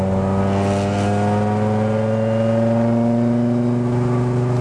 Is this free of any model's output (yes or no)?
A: yes